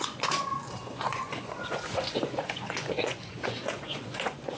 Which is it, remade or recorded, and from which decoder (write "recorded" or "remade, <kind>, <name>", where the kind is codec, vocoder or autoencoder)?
remade, vocoder, Vocos